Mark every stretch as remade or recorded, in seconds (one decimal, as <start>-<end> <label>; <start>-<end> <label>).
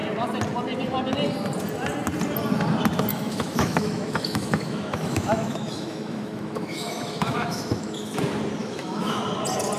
0.0-3.1 recorded; 3.1-8.2 remade; 8.2-8.6 recorded; 8.6-9.2 remade; 9.2-9.8 recorded